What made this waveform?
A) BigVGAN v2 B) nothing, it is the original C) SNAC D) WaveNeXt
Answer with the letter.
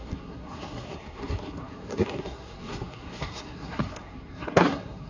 C